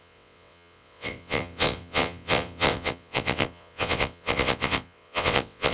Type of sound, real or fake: fake